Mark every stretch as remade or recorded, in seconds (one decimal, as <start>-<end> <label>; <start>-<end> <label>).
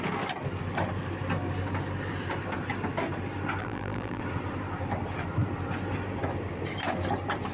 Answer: 0.0-3.6 recorded; 3.6-4.2 remade; 4.2-7.5 recorded